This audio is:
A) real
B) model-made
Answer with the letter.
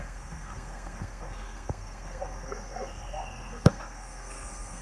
B